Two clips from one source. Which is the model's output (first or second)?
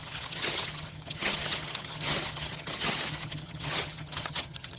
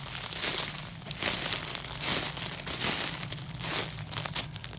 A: first